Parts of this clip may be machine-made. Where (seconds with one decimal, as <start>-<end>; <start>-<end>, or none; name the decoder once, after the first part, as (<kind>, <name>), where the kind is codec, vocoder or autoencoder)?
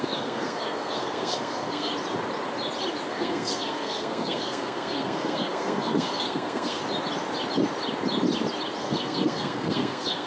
0.0-1.9 (codec, SNAC); 3.1-6.8; 8.8-10.3